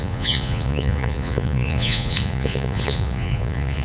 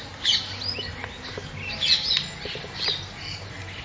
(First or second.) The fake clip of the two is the first